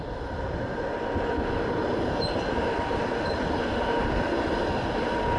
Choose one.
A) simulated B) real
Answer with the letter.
B